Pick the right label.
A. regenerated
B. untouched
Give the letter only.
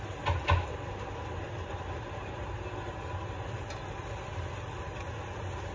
B